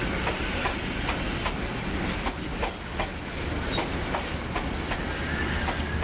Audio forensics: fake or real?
real